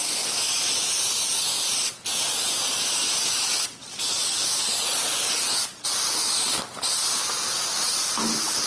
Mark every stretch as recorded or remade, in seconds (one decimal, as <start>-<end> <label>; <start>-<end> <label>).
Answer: 0.0-8.7 recorded

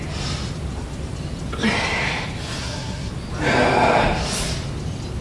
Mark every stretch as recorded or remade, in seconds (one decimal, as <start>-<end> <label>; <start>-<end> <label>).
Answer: 0.0-2.6 recorded; 2.6-3.1 remade; 3.1-5.2 recorded

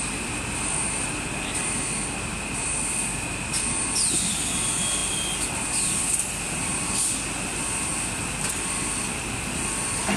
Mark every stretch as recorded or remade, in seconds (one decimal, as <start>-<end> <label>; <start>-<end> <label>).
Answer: 0.0-10.2 recorded

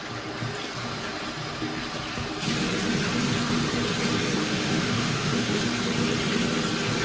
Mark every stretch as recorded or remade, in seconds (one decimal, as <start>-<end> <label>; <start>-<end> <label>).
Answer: 0.0-4.4 recorded; 4.4-5.6 remade; 5.6-7.0 recorded

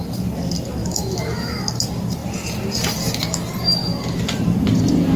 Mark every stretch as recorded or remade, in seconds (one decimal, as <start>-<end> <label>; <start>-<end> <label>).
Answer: 0.0-0.8 recorded; 0.8-1.6 remade; 1.6-5.2 recorded

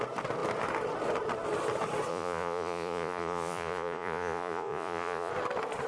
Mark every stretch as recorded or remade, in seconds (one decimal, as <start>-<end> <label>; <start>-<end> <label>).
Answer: 0.0-2.1 recorded; 2.1-5.3 remade; 5.3-5.9 recorded

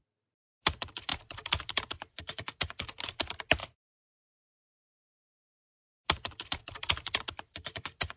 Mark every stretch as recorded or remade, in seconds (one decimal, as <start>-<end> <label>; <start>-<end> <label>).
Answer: 0.0-8.2 recorded